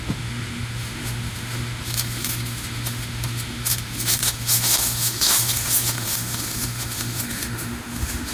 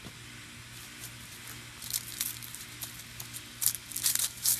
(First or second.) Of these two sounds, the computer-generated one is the first